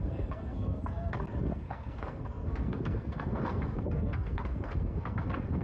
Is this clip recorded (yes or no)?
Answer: no